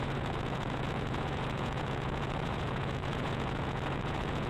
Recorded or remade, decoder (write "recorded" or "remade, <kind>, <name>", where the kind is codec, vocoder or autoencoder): remade, vocoder, Vocos